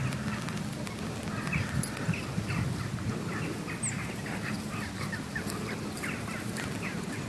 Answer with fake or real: real